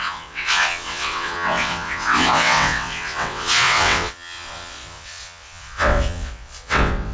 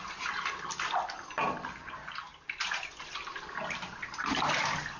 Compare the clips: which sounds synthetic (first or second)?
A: first